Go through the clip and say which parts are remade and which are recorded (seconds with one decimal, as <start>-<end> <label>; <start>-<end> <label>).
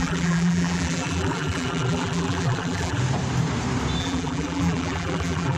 0.0-3.0 remade; 3.0-4.0 recorded; 4.0-5.6 remade